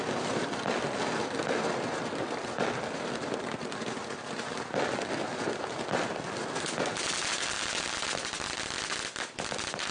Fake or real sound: real